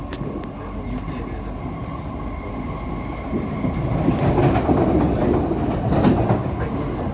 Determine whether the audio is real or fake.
real